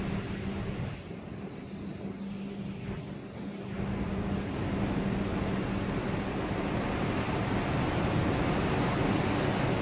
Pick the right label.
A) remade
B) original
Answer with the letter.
B